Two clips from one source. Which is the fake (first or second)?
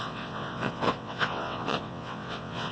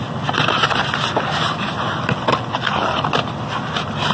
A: first